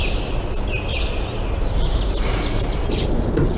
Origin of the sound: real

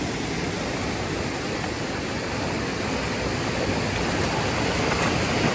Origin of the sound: real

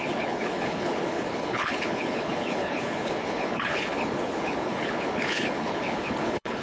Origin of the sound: fake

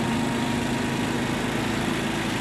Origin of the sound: real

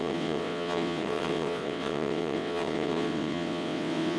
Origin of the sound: fake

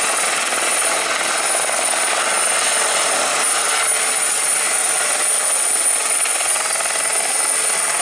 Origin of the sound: real